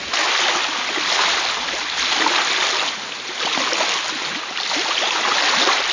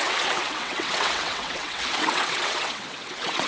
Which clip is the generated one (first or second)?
second